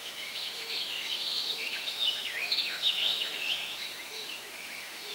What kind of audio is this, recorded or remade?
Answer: remade